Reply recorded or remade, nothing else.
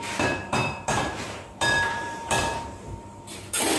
remade